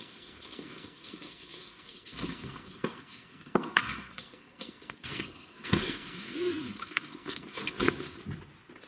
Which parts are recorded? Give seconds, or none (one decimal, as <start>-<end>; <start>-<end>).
8.2-8.9